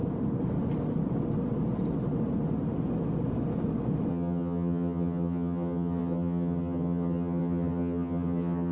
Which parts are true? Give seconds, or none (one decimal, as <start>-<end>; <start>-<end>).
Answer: 0.0-4.1